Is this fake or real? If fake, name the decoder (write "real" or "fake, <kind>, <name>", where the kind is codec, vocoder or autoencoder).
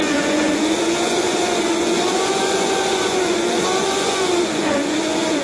fake, vocoder, Vocos